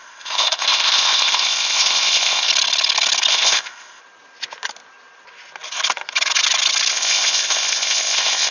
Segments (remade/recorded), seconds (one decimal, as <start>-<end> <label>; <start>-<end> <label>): 0.0-2.5 remade; 2.5-3.3 recorded; 3.3-4.0 remade; 4.0-6.9 recorded; 6.9-8.5 remade